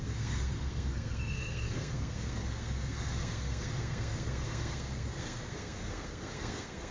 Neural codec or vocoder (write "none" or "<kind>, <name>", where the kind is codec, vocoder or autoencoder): codec, SNAC